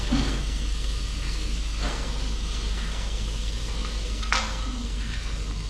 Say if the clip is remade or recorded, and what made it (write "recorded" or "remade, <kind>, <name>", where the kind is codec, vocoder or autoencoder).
remade, codec, SNAC